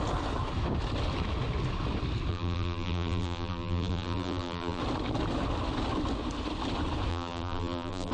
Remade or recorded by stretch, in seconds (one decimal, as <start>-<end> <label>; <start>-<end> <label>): 0.0-2.3 recorded; 2.3-4.8 remade; 4.8-7.1 recorded; 7.1-8.1 remade